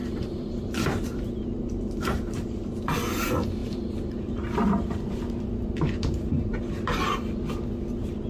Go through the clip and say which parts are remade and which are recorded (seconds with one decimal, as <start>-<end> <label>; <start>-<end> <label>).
0.0-2.8 remade; 2.8-3.6 recorded; 3.6-7.1 remade; 7.1-8.3 recorded